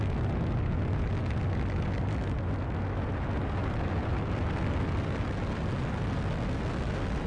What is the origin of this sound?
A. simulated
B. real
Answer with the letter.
B